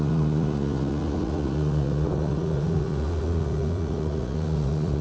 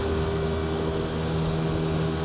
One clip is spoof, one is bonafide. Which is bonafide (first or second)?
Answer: second